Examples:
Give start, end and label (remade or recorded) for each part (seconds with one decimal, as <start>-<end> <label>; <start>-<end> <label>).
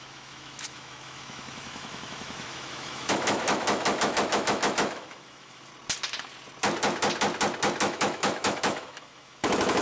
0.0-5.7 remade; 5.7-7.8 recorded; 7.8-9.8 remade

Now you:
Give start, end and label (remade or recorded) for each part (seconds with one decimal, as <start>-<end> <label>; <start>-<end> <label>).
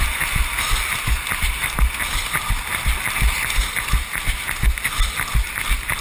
0.0-6.0 recorded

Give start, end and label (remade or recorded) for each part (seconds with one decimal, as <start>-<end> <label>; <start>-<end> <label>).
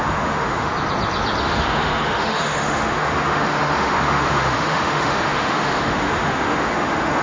0.0-0.7 remade; 0.7-1.4 recorded; 1.4-7.2 remade